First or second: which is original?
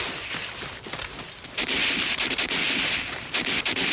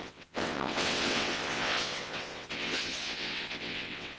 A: first